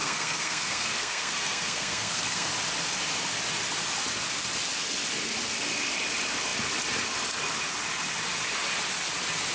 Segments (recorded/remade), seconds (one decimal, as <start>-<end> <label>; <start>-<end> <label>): 0.0-2.5 remade; 2.5-9.5 recorded